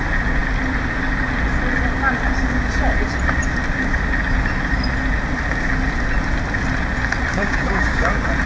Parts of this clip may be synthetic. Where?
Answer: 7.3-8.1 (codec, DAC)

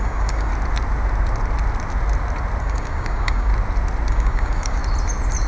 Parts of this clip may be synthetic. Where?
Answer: 0.0-0.5 (codec, DAC); 2.6-3.5; 4.1-4.8

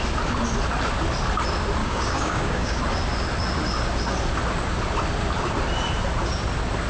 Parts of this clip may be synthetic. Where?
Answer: 1.8-2.8 (codec, DAC)